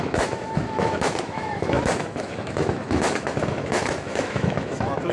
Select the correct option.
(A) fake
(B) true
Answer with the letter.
A